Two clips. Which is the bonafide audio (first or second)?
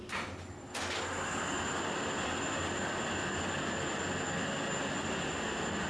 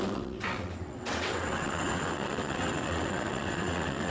first